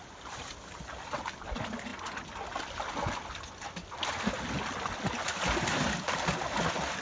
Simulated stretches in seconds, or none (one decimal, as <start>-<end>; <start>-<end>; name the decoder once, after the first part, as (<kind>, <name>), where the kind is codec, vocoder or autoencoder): none